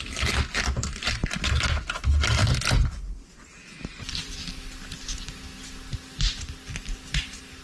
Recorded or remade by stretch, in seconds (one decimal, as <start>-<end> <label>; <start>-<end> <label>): 0.0-1.2 recorded; 1.2-1.9 remade; 1.9-2.4 recorded; 2.4-4.5 remade; 4.5-7.6 recorded